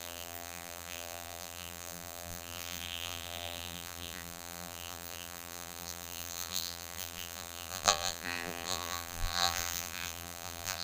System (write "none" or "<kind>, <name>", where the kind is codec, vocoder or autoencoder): vocoder, BigVGAN v2